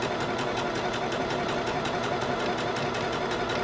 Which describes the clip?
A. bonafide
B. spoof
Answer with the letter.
B